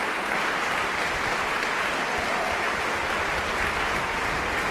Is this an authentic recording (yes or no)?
yes